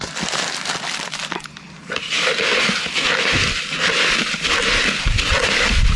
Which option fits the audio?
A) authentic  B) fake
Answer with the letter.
A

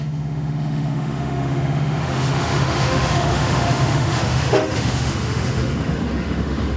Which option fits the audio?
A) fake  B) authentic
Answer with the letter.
A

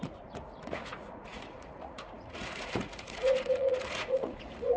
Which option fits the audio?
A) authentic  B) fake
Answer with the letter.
B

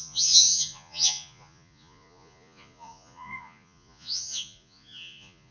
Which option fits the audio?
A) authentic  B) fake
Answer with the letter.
B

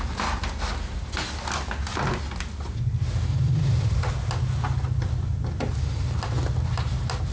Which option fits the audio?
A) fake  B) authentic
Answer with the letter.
B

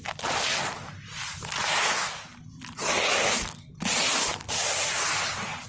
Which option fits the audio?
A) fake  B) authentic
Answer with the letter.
B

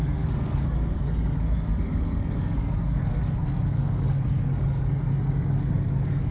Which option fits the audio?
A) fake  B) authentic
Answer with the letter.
A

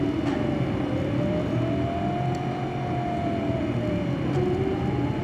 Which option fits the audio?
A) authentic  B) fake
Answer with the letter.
A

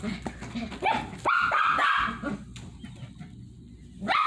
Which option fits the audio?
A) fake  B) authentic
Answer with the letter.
B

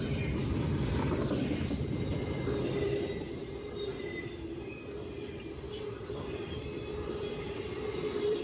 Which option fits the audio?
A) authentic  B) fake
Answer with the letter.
B